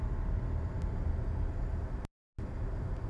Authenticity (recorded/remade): recorded